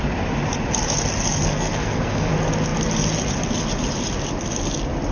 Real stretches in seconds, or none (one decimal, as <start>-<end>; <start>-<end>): 0.0-1.4; 2.3-5.1